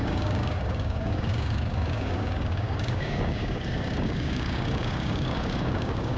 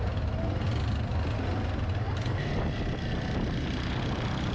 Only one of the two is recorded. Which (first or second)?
second